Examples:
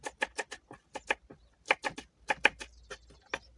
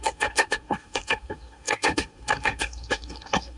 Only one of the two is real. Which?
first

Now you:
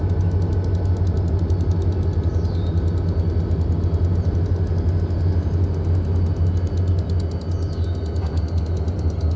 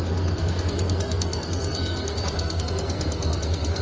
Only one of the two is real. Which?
first